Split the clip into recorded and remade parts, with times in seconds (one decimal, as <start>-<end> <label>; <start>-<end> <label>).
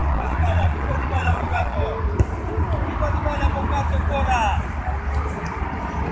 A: 0.0-1.8 remade; 1.8-6.1 recorded